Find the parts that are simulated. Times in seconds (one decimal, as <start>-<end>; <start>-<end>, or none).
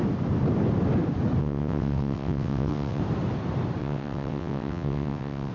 1.4-3.0; 3.8-5.5